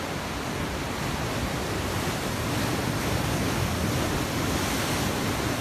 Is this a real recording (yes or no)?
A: yes